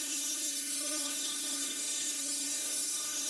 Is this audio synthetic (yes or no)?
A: yes